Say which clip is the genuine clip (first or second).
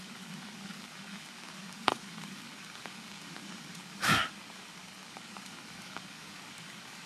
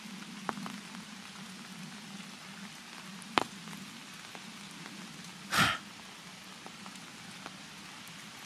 second